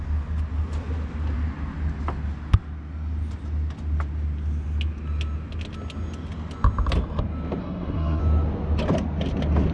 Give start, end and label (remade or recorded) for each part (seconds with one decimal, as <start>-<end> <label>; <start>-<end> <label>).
0.0-7.6 recorded; 7.6-8.2 remade; 8.2-9.7 recorded